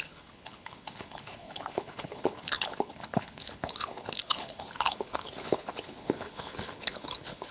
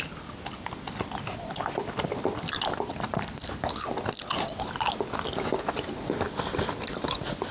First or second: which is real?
second